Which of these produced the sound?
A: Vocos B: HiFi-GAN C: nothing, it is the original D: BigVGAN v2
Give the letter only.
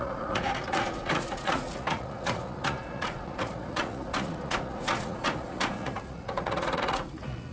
A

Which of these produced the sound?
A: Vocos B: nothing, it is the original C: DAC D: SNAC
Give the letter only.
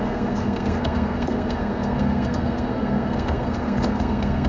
D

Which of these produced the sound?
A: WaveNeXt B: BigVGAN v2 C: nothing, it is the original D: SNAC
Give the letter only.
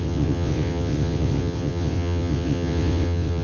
A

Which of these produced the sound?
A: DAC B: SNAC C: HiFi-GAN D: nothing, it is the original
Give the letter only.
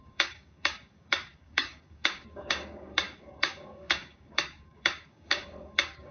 A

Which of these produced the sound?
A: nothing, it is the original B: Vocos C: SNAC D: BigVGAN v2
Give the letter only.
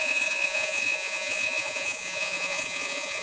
B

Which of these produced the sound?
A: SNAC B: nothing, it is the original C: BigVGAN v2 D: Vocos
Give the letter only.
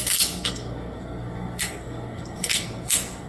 A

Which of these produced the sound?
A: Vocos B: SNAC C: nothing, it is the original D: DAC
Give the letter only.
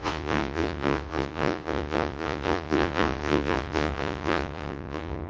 A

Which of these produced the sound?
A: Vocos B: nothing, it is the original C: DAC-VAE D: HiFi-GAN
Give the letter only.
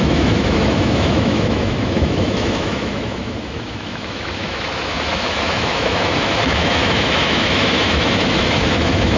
C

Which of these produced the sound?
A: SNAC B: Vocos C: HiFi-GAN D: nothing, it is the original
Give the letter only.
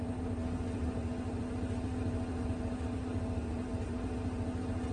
D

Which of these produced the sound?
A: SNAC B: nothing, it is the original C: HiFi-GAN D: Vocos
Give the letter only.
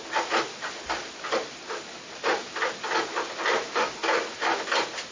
B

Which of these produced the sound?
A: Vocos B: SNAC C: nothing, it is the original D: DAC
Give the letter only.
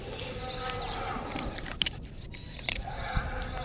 C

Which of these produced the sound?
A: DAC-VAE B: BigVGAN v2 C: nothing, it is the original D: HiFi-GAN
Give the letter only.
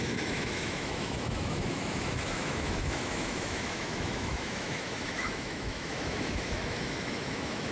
A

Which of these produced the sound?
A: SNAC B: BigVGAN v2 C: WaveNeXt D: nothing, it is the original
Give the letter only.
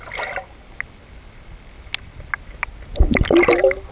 D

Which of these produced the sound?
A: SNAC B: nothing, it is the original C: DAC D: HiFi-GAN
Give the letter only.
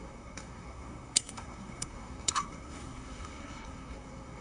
A